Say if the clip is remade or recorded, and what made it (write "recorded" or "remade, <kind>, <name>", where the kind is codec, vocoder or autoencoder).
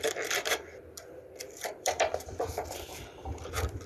remade, vocoder, BigVGAN v2